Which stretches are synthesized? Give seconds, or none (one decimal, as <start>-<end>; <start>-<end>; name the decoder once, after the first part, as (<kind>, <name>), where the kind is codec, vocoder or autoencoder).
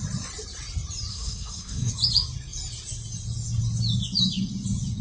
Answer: 1.1-1.9 (codec, SNAC)